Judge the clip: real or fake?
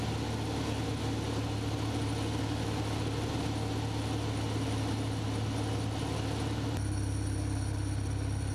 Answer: real